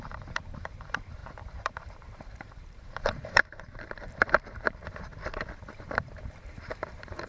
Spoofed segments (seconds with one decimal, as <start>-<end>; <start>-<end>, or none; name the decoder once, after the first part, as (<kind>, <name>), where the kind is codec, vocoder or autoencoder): 0.0-5.1 (vocoder, BigVGAN v2); 5.6-7.3